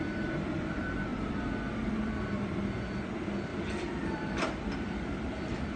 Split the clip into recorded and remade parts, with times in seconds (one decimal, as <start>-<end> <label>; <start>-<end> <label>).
0.0-1.1 remade; 1.1-1.7 recorded; 1.7-5.8 remade